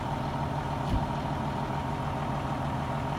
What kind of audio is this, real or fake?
real